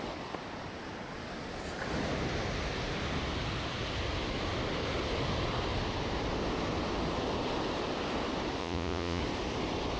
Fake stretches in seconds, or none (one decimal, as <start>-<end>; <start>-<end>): 8.6-9.2